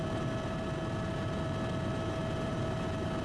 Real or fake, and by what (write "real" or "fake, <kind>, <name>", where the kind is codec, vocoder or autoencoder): real